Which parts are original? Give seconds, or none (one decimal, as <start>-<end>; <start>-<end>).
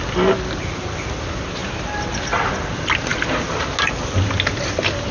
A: 0.0-5.1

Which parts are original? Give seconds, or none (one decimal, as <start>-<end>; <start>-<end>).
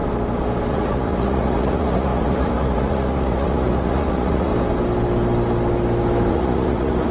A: 0.0-0.7; 4.5-6.3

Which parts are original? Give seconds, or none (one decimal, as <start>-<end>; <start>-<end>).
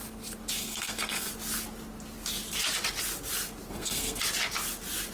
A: 0.0-0.6; 1.3-3.7; 4.2-5.1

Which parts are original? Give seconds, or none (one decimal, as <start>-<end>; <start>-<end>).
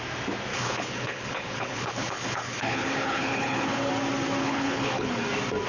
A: 0.0-0.5; 3.9-4.4; 5.1-5.7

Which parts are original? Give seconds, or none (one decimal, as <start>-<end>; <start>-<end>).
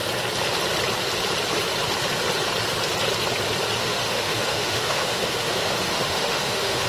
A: 0.0-3.8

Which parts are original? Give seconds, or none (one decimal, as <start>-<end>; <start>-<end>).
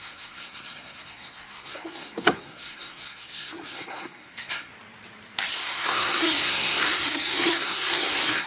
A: 4.7-5.5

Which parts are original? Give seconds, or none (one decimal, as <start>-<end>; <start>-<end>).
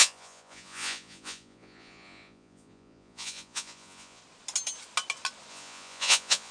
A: 4.2-5.5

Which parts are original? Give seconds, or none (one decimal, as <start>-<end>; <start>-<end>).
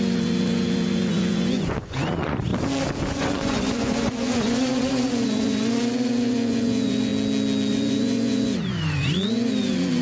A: 2.5-3.1; 7.1-7.7